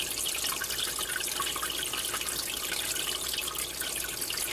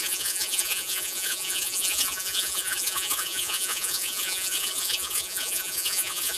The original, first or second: first